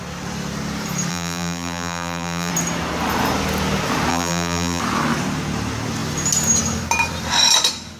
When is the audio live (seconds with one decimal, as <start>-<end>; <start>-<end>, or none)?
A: 0.0-1.1; 2.5-4.1; 4.8-8.0